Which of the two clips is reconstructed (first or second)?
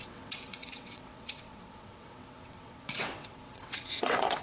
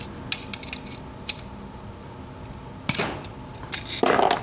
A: first